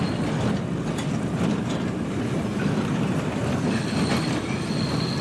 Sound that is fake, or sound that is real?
real